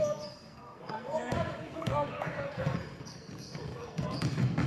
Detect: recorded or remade remade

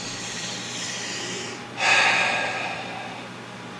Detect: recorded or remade recorded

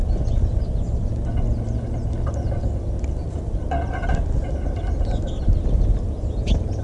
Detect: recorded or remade recorded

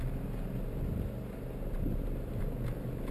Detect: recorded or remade recorded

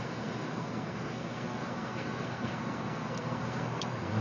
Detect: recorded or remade remade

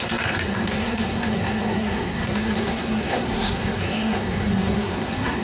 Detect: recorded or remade remade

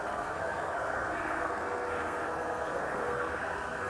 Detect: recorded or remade remade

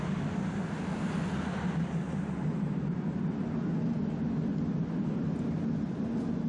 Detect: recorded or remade recorded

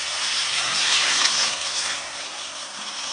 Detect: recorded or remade remade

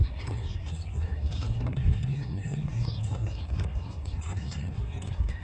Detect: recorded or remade remade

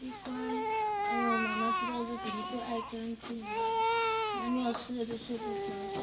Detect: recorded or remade recorded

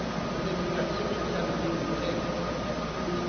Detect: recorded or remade recorded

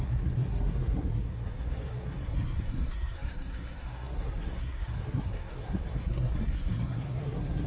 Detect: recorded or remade remade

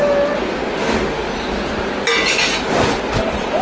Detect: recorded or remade recorded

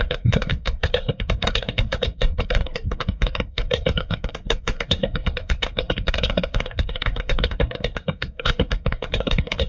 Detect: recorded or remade remade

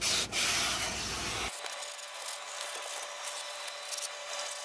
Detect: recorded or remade recorded